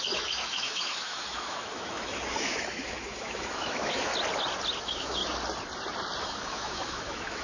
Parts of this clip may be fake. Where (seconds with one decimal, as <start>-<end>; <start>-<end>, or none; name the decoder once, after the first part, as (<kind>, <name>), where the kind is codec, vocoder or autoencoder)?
0.0-4.1 (autoencoder, DAC-VAE); 4.8-5.2; 6.2-7.4